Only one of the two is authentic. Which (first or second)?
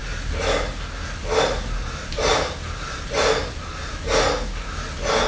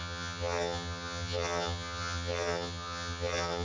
first